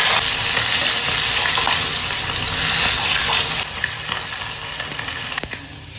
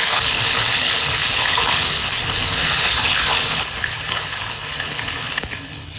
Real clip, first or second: first